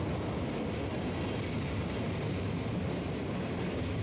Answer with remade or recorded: recorded